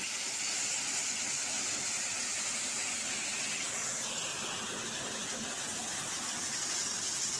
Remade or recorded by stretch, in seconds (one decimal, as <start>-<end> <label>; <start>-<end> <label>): 0.0-7.4 recorded